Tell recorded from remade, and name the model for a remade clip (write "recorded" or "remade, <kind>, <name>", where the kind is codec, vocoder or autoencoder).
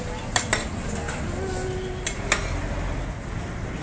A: recorded